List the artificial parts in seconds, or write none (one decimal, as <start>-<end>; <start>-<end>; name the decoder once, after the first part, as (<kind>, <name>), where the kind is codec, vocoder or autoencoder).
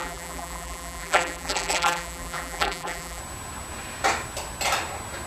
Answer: 0.0-3.2 (vocoder, BigVGAN v2)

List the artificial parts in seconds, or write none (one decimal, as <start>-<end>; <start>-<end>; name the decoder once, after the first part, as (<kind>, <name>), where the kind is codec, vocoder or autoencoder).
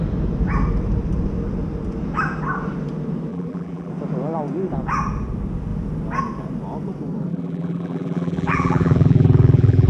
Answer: 3.3-3.9 (vocoder, BigVGAN v2); 7.3-9.9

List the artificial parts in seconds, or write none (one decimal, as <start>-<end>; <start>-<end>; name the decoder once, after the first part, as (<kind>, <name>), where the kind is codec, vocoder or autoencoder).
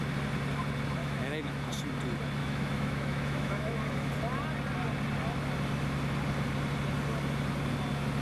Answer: 1.0-1.7 (autoencoder, DAC-VAE); 2.4-4.1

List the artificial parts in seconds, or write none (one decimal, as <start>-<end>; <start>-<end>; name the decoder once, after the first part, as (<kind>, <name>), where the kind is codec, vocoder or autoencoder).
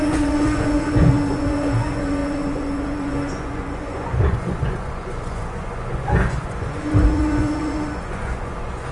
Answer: 0.0-8.9 (vocoder, Vocos)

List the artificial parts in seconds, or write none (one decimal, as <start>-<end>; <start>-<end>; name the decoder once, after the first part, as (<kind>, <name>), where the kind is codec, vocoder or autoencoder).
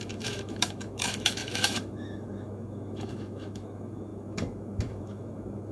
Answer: 0.0-5.7 (autoencoder, DAC-VAE)